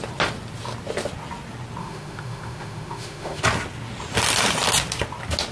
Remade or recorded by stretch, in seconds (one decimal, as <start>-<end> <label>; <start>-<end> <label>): 0.0-1.8 recorded; 1.8-3.4 remade; 3.4-5.5 recorded